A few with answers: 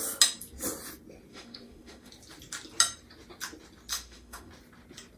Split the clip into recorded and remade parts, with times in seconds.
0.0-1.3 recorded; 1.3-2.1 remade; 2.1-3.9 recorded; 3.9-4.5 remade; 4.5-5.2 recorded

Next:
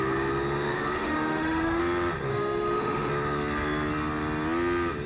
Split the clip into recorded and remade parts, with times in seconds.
0.0-0.7 recorded; 0.7-1.8 remade; 1.8-2.3 recorded; 2.3-3.1 remade; 3.1-5.1 recorded

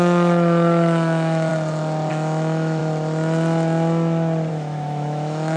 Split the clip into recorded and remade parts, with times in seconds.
0.0-1.5 remade; 1.5-2.1 recorded; 2.1-2.8 remade; 2.8-4.5 recorded; 4.5-5.6 remade

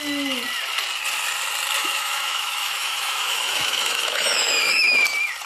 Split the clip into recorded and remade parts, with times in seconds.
0.0-1.8 recorded; 1.8-5.0 remade; 5.0-5.5 recorded